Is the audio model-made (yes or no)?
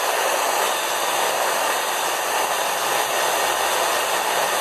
no